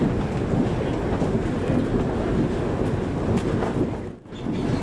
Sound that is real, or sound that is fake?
real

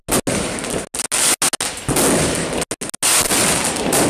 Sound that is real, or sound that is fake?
real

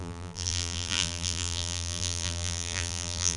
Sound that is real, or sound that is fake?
fake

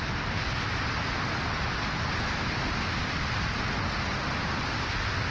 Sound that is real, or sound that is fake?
real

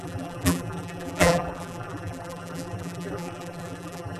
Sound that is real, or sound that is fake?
fake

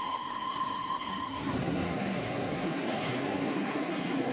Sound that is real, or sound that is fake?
fake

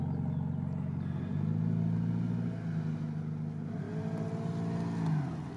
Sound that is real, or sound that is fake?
real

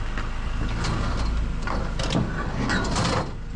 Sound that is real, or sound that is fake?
real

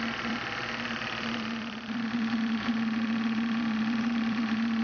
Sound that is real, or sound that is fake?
fake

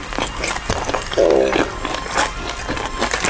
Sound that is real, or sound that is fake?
real